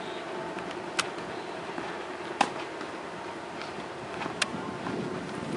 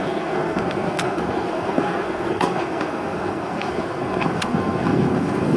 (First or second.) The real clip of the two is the first